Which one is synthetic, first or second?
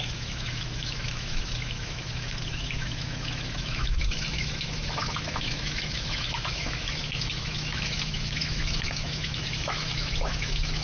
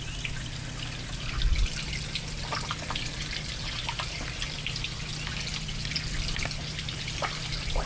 first